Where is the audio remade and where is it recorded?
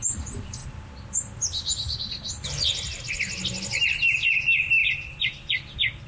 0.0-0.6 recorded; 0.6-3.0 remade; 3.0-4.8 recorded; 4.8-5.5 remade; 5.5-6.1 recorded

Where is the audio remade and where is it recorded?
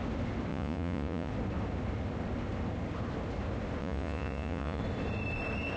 0.0-0.5 recorded; 0.5-1.3 remade; 1.3-3.8 recorded; 3.8-4.8 remade; 4.8-5.8 recorded